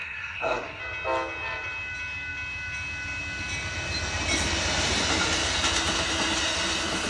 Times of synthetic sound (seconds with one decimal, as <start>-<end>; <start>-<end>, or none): 0.0-0.8